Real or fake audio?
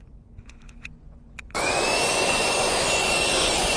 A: fake